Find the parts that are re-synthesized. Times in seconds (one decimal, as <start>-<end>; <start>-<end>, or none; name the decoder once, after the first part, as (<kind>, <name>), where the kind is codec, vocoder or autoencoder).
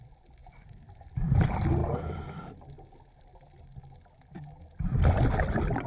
none